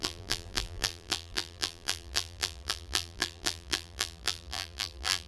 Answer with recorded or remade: remade